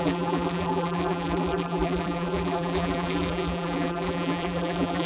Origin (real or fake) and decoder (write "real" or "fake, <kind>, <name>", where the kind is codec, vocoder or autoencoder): fake, vocoder, BigVGAN v2